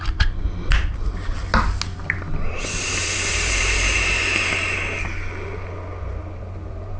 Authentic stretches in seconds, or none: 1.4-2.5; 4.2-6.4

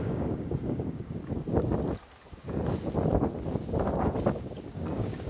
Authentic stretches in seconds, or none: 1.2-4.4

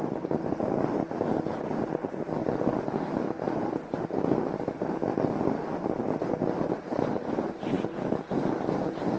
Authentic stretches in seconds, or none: none

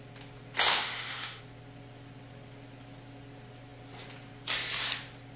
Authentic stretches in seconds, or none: 0.0-0.7; 1.4-5.4